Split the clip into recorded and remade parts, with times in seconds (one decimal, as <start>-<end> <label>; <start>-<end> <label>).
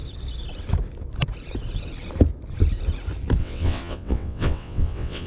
0.0-3.4 recorded; 3.4-5.3 remade